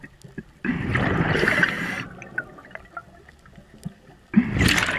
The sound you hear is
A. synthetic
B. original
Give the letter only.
B